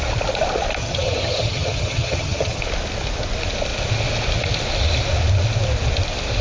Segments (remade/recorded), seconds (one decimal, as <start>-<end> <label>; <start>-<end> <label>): 0.0-0.8 recorded; 0.8-2.6 remade; 2.6-6.4 recorded